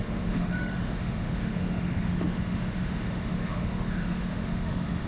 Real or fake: fake